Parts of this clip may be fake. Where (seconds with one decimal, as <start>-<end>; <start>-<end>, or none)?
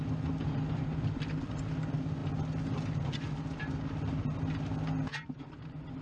5.0-6.0